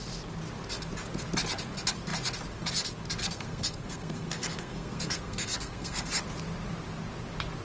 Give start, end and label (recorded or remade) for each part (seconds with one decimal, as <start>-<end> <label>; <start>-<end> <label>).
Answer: 0.0-3.2 recorded; 3.2-6.1 remade; 6.1-7.6 recorded